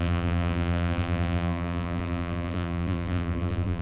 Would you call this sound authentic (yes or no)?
no